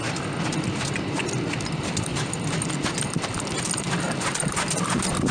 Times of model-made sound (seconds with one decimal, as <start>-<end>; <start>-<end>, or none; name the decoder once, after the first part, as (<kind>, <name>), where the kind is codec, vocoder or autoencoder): none